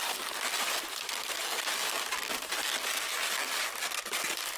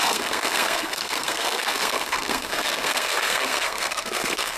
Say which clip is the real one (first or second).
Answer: first